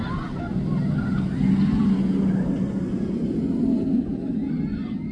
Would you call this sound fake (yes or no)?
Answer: no